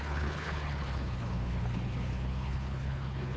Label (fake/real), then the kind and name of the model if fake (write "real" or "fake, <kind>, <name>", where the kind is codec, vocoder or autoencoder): fake, codec, HILCodec